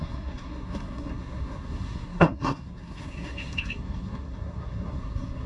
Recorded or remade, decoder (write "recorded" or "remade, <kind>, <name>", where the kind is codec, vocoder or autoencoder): remade, codec, SNAC